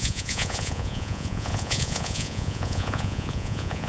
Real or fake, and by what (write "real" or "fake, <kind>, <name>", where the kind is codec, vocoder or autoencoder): fake, vocoder, Vocos